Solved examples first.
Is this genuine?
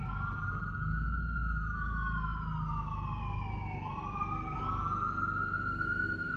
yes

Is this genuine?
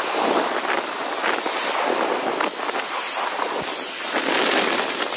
yes